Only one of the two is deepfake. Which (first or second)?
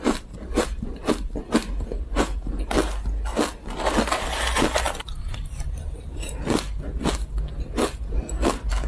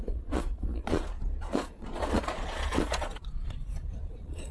second